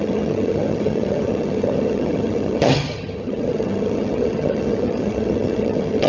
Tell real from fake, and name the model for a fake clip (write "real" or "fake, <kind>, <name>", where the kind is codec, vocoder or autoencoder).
fake, vocoder, HiFi-GAN